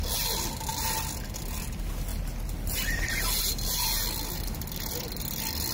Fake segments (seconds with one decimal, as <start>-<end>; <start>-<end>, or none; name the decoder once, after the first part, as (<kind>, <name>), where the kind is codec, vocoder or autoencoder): 0.7-1.4 (vocoder, BigVGAN v2); 2.1-3.4